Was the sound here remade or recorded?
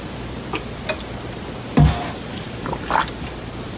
recorded